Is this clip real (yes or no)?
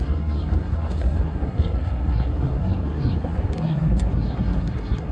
no